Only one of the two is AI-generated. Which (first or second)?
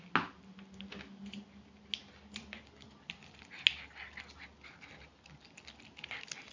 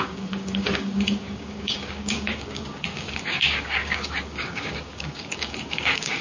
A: second